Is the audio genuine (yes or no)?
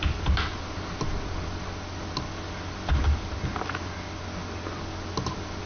yes